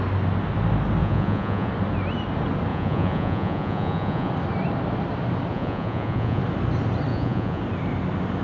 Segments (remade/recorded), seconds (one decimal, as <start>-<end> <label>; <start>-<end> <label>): 0.0-1.0 recorded; 1.0-1.7 remade; 1.7-2.7 recorded; 2.7-4.3 remade; 4.3-5.5 recorded; 5.5-6.4 remade; 6.4-7.1 recorded; 7.1-7.6 remade; 7.6-8.4 recorded